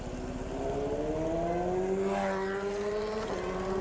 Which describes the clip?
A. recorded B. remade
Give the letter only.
A